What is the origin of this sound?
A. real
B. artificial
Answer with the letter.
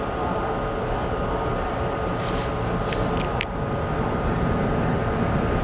A